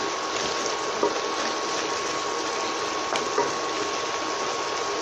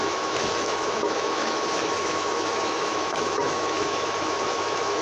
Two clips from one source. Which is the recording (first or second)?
first